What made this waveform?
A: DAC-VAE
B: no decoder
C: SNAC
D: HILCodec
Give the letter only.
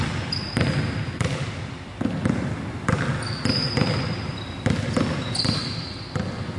B